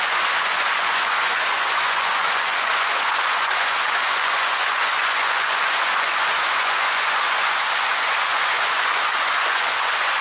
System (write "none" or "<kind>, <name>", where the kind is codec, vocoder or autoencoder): vocoder, Vocos